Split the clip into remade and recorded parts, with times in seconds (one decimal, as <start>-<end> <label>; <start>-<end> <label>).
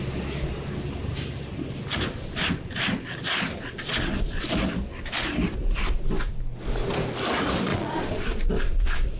0.0-7.7 recorded; 7.7-8.4 remade; 8.4-9.2 recorded